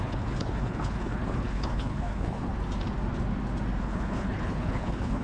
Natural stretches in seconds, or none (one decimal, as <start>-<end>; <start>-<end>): 2.5-3.8